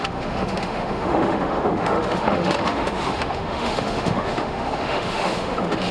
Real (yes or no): no